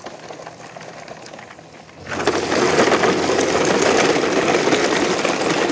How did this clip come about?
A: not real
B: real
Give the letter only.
B